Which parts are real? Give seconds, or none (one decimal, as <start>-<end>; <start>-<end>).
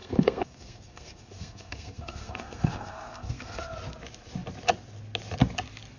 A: 3.6-6.0